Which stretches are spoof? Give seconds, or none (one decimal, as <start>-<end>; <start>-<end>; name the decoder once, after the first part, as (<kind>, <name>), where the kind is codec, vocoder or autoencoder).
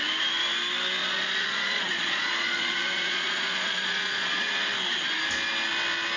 1.0-4.5 (vocoder, Vocos)